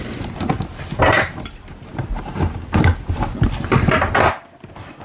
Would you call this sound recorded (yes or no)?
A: yes